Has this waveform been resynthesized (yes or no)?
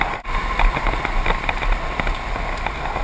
no